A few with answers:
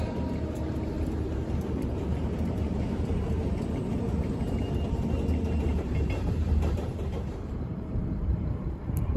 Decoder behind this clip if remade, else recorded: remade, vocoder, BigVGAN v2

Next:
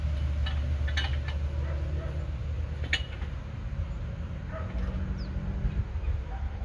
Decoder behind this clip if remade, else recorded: recorded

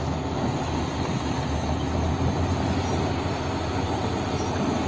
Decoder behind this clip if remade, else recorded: recorded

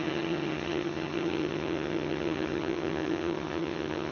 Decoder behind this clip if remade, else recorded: remade, vocoder, HiFi-GAN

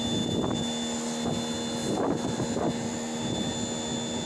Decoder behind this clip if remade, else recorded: recorded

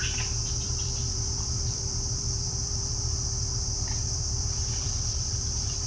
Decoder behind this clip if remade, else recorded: remade, vocoder, BigVGAN v2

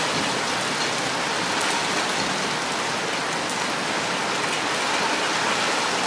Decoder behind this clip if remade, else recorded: recorded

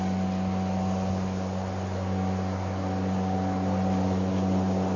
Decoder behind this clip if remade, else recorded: recorded